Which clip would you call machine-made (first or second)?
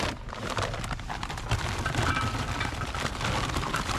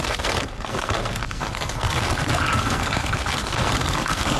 second